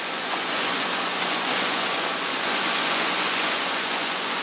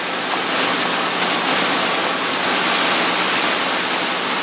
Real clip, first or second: second